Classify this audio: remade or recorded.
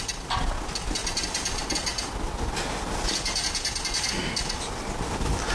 recorded